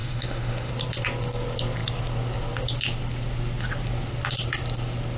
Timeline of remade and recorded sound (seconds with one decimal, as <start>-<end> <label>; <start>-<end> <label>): 0.0-0.7 remade; 0.7-5.2 recorded